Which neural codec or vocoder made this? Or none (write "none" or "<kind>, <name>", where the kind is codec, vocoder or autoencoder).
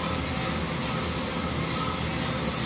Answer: none